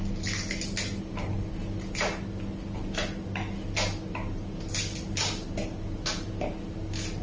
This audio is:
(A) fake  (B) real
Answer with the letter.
B